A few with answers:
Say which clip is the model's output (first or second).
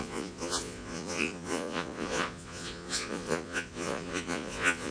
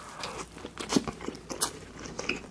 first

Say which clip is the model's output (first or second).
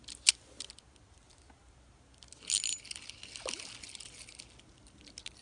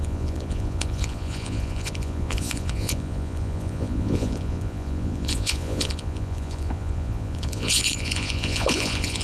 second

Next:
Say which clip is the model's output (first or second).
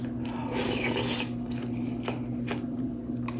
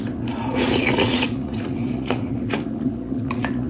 second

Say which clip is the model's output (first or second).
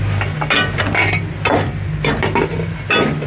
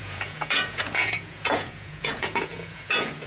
second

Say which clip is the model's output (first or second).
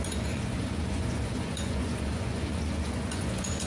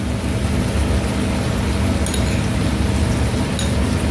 first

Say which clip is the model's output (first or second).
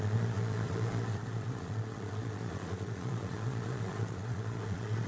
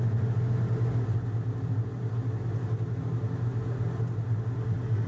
first